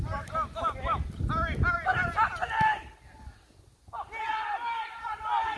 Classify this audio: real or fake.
real